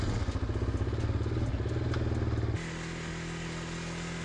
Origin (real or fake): real